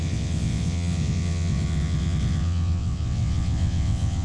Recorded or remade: remade